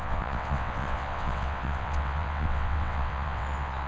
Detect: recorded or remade remade